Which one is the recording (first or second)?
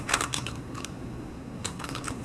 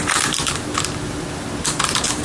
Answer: second